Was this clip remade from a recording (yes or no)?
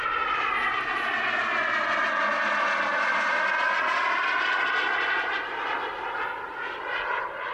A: no